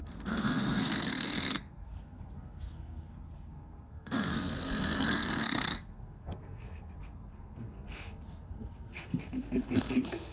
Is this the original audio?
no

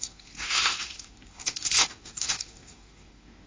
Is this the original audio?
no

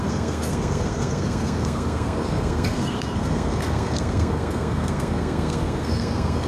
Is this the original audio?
no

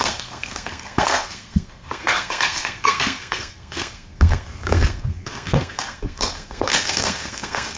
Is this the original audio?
no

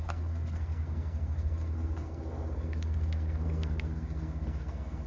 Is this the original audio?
no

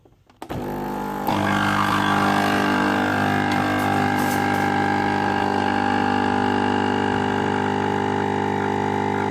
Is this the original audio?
yes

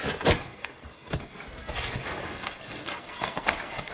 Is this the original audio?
no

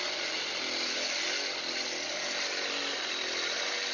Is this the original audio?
yes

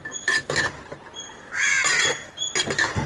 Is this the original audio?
yes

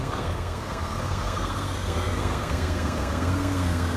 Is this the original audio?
no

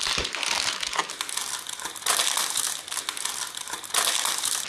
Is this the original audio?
yes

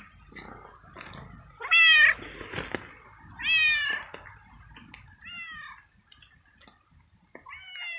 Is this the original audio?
yes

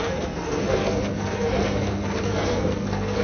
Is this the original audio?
no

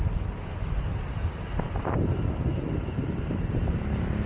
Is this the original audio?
yes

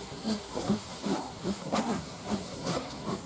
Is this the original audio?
no